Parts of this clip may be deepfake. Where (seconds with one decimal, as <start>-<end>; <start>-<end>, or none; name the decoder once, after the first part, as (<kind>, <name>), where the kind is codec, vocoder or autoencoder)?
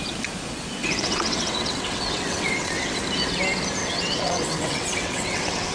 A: 0.8-3.0 (vocoder, WaveNeXt); 3.8-5.7